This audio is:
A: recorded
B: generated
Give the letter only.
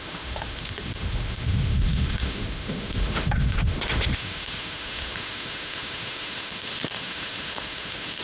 B